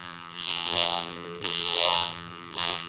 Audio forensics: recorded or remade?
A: remade